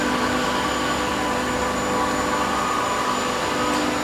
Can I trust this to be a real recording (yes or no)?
yes